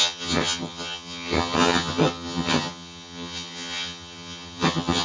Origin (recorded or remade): remade